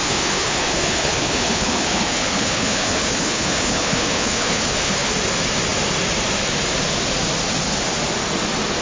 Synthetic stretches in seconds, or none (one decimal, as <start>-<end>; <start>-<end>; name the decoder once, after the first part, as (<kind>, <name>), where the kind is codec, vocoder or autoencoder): 0.0-5.1 (codec, HILCodec)